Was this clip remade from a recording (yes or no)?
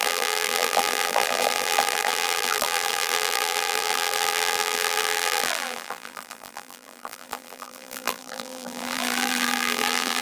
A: yes